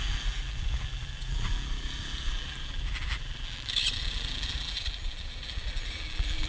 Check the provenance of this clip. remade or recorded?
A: remade